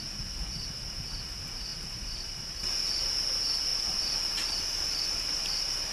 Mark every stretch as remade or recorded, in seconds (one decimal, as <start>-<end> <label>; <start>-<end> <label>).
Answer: 0.0-1.7 recorded; 1.7-2.8 remade; 2.8-3.7 recorded; 3.7-4.3 remade; 4.3-5.9 recorded